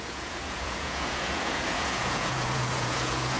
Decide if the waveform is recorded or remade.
remade